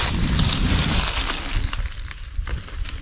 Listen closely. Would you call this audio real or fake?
real